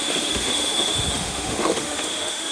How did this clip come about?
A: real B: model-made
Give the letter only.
B